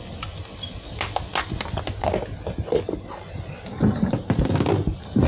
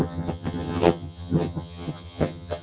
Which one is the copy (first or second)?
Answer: second